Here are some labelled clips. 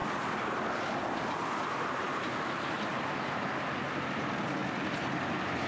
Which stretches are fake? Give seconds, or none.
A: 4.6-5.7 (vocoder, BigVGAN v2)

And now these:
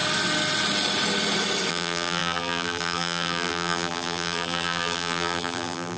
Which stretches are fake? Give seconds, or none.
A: 1.7-6.0 (vocoder, BigVGAN v2)

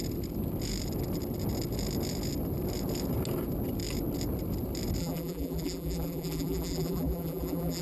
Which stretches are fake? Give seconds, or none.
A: 5.0-7.8 (vocoder, BigVGAN v2)

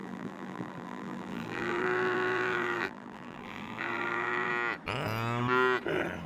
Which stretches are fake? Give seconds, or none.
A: 0.0-4.5 (vocoder, BigVGAN v2)

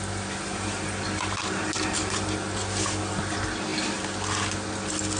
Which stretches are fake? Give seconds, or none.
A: none